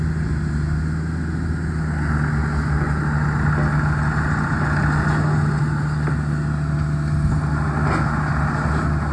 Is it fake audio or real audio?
real